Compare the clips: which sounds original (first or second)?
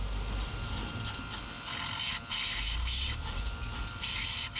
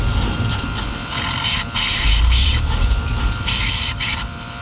first